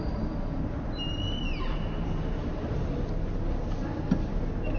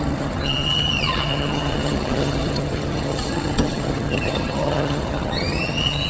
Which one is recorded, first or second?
first